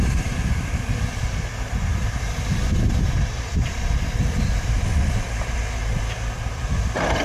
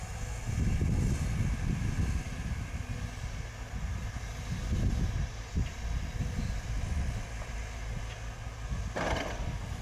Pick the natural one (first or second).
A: second